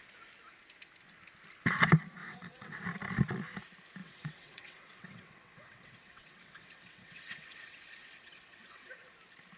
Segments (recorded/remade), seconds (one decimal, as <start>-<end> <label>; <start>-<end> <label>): 0.0-2.2 recorded; 2.2-2.8 remade; 2.8-4.0 recorded; 4.0-8.9 remade; 8.9-9.6 recorded

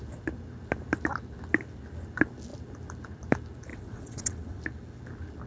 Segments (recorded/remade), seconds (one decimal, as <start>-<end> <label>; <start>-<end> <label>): 0.0-3.7 recorded; 3.7-4.6 remade; 4.6-5.5 recorded

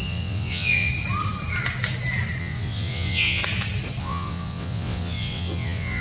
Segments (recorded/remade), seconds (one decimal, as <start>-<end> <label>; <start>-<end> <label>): 0.0-0.9 remade; 0.9-2.4 recorded; 2.4-3.4 remade; 3.4-4.0 recorded; 4.0-6.0 remade

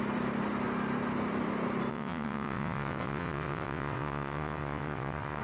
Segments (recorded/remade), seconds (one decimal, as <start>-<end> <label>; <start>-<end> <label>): 0.0-1.9 recorded; 1.9-5.4 remade

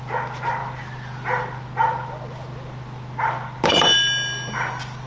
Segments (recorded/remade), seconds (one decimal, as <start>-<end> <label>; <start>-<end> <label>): 0.0-5.1 recorded

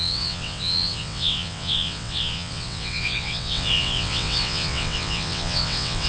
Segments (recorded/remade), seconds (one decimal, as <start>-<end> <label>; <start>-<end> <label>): 0.0-6.1 remade